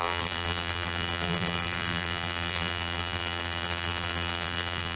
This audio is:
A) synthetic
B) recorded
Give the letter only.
A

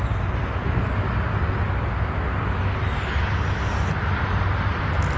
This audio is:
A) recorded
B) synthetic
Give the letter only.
A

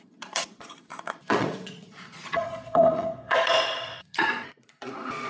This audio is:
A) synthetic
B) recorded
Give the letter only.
A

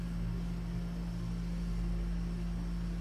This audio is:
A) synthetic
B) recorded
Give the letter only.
B